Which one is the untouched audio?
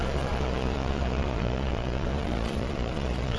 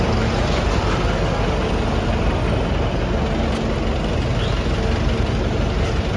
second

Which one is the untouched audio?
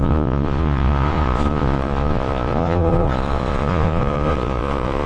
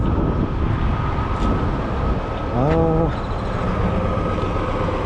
second